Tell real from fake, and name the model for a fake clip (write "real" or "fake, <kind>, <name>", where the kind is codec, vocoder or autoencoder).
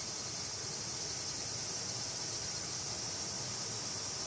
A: real